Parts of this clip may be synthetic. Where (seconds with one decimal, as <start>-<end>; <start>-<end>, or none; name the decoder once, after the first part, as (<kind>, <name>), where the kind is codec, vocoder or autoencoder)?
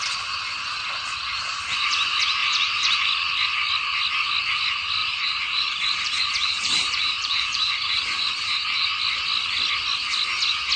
2.4-3.0 (vocoder, BigVGAN v2); 5.0-9.0